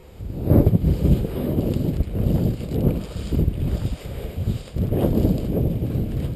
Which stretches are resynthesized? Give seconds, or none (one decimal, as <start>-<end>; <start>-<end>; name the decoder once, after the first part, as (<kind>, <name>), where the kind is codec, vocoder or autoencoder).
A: 0.0-1.6 (autoencoder, DAC-VAE); 4.0-4.6